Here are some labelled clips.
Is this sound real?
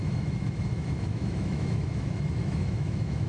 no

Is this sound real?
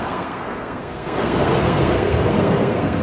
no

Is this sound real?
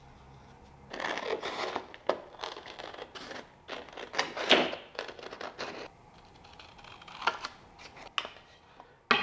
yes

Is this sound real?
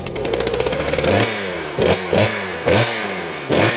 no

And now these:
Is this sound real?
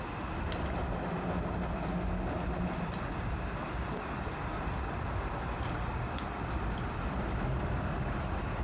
yes